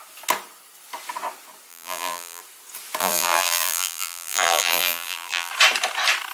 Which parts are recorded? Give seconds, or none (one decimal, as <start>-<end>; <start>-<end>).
0.0-1.7; 2.4-3.0; 5.5-6.3